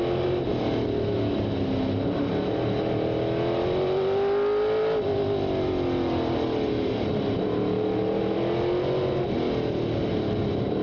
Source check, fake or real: real